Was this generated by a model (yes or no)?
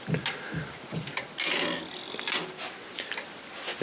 no